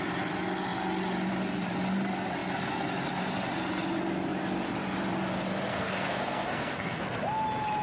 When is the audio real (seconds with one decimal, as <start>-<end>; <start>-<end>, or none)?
0.0-5.7; 7.0-7.8

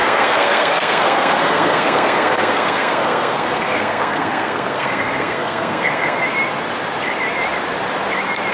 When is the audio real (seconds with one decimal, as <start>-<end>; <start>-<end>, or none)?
6.2-8.5

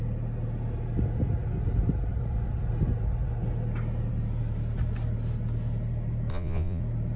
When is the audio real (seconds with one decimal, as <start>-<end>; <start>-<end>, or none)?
0.0-6.3; 6.8-7.2

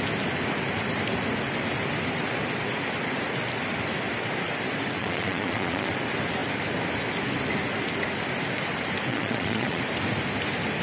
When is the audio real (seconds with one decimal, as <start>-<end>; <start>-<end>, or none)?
0.0-5.0; 5.9-9.1; 9.8-10.8

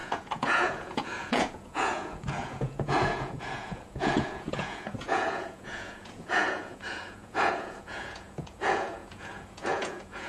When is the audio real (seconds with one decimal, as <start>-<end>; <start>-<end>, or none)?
none

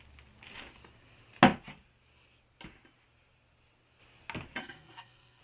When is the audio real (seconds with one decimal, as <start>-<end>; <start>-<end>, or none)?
0.0-4.6

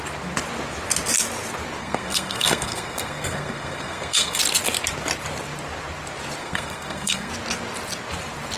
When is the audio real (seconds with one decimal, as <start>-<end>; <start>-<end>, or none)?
0.0-1.8; 4.4-6.4; 7.3-8.6